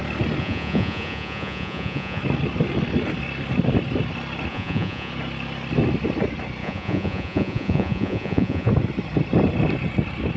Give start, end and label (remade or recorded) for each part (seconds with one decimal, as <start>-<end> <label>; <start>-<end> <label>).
0.0-0.4 recorded; 0.4-2.2 remade; 2.2-4.5 recorded; 4.5-5.1 remade; 5.1-6.6 recorded; 6.6-8.7 remade; 8.7-10.4 recorded